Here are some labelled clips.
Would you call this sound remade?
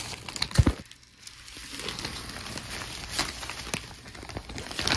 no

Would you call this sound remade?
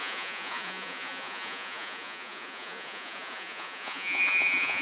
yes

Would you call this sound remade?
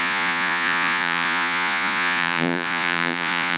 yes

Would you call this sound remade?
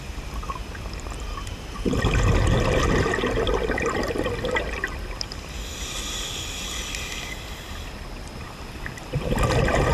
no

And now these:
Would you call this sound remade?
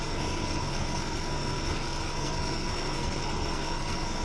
yes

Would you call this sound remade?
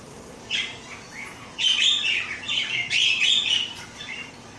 yes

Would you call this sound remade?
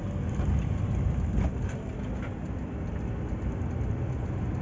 no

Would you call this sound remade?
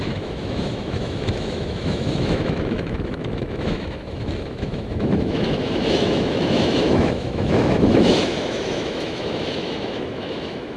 yes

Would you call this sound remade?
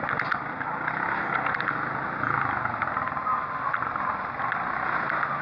no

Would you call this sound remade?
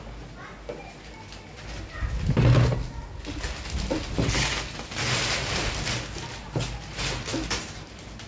no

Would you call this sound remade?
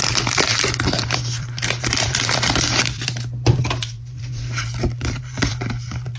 yes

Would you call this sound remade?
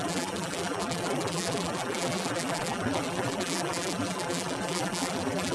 yes